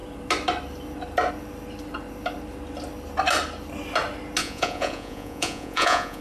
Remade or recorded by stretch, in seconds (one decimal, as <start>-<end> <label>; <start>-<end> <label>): 0.0-4.4 recorded; 4.4-6.2 remade